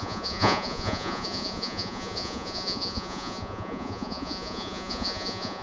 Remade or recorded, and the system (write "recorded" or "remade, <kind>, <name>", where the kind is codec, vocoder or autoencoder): remade, vocoder, Vocos